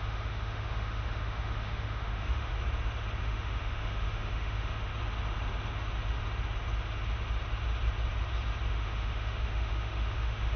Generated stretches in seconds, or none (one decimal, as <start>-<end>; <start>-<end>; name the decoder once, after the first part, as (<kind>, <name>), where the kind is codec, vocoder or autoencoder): 0.0-2.5 (autoencoder, DAC-VAE); 3.2-4.9; 8.7-10.6